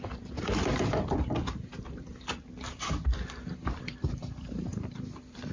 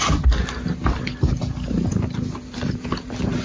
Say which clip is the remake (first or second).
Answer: first